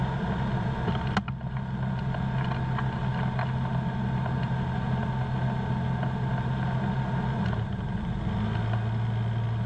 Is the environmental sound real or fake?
real